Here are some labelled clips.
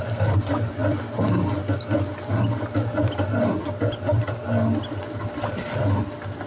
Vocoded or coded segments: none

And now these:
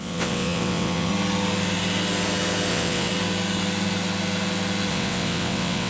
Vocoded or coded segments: 0.0-1.1 (vocoder, WaveNeXt); 2.7-3.1; 4.9-5.9

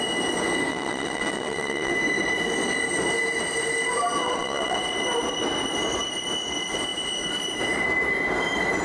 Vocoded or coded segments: 0.7-1.9 (vocoder, WaveNeXt); 4.2-4.8

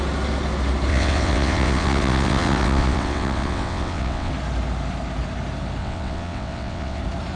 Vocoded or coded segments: 0.9-4.3 (vocoder, WaveNeXt); 5.8-7.0

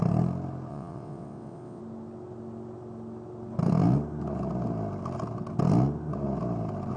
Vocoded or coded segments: 0.7-1.8 (vocoder, WaveNeXt)